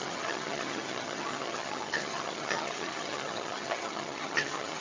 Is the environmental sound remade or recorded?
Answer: remade